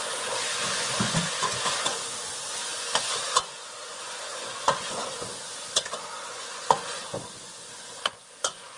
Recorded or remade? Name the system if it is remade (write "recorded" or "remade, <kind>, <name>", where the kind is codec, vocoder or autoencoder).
remade, vocoder, Vocos